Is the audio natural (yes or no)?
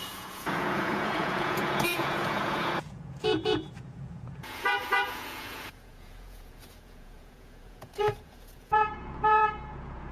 no